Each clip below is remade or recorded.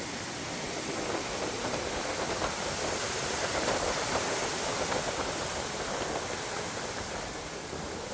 recorded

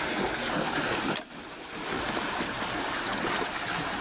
recorded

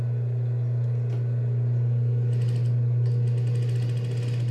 recorded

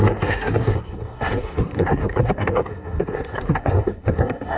remade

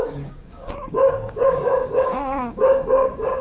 remade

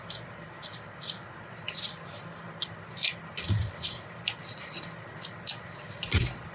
recorded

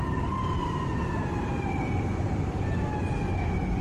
remade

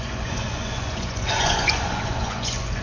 remade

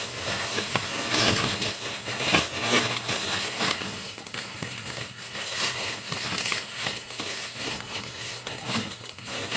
remade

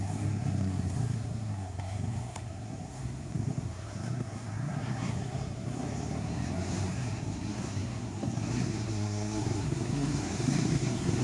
remade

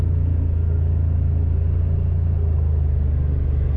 recorded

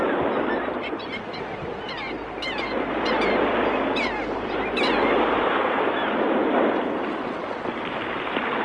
recorded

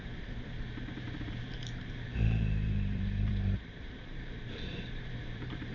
remade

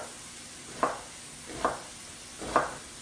recorded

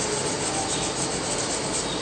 recorded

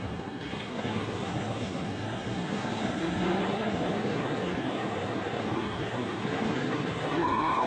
remade